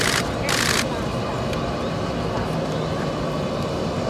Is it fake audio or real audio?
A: real